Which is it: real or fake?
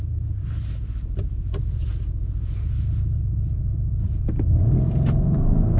fake